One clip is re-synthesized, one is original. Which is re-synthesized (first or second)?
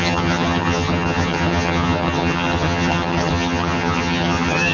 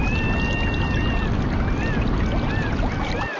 first